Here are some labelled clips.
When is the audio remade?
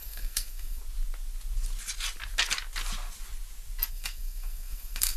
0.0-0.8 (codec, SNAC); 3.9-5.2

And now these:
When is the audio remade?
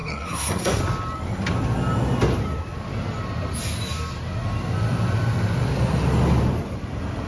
0.0-0.8 (codec, SNAC)